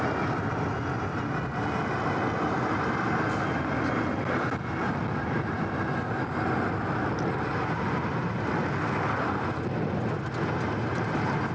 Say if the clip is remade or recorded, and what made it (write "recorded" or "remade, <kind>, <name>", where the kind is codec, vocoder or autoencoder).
recorded